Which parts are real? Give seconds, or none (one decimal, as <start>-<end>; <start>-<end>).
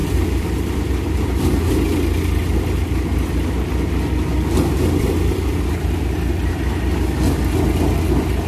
1.4-4.3; 6.5-8.5